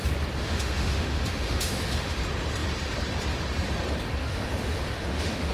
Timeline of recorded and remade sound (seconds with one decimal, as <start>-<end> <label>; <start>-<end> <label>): 0.0-0.4 recorded; 0.4-2.2 remade; 2.2-4.2 recorded; 4.2-5.5 remade